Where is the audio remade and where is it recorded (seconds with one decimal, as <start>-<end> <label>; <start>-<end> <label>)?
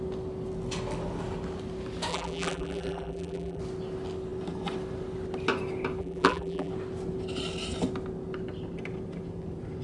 0.0-2.1 recorded; 2.1-3.6 remade; 3.6-6.0 recorded; 6.0-6.7 remade; 6.7-9.8 recorded